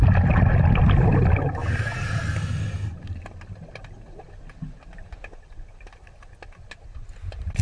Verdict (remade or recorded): recorded